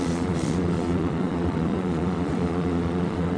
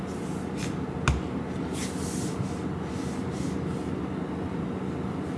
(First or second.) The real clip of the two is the second